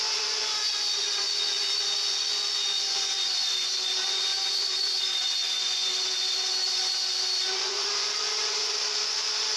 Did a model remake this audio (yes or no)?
yes